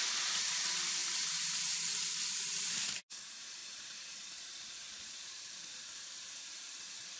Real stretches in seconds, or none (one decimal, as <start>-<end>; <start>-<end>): 0.0-1.0; 1.9-3.6